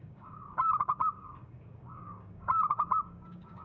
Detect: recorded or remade remade